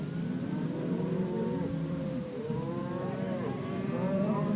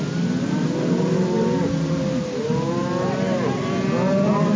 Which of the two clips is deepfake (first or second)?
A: first